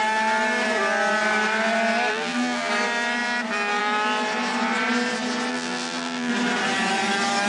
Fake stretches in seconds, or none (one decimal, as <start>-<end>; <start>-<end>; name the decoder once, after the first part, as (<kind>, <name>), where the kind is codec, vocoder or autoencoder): 2.1-2.7 (vocoder, BigVGAN v2); 5.5-6.3